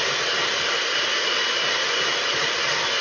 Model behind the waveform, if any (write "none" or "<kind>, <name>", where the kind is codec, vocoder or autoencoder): none